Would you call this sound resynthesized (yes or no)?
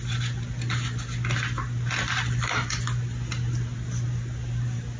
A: no